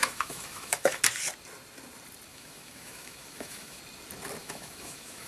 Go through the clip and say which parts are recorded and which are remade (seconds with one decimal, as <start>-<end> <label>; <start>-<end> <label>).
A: 0.0-1.0 remade; 1.0-2.3 recorded; 2.3-3.8 remade; 3.8-4.4 recorded; 4.4-5.3 remade